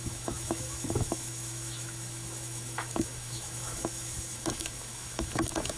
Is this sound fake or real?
fake